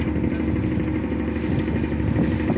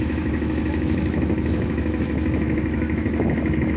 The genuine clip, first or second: first